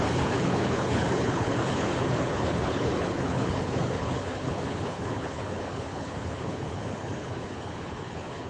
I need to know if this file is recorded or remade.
remade